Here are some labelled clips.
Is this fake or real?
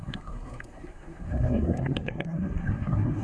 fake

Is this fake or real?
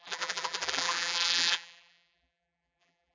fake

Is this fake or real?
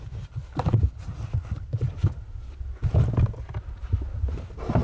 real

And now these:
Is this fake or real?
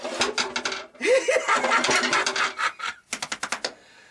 real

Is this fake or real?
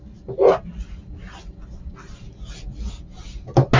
real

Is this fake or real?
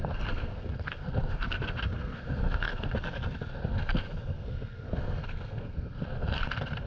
fake